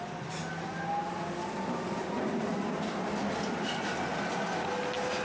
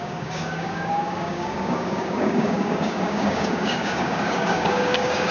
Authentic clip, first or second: first